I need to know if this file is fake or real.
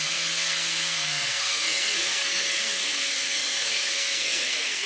fake